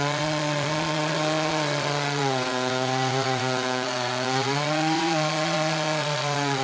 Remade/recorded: remade